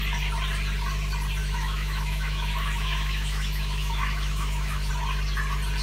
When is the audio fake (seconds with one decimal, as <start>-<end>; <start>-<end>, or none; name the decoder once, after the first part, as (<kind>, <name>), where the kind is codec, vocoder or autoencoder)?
1.4-4.9 (autoencoder, DAC-VAE)